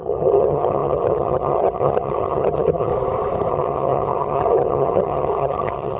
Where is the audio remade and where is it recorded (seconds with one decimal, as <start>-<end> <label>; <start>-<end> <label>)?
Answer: 0.0-2.9 remade; 2.9-3.5 recorded; 3.5-6.0 remade